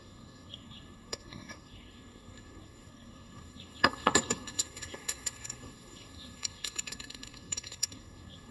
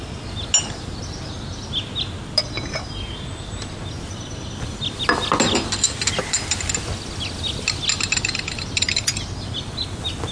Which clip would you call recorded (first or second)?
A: second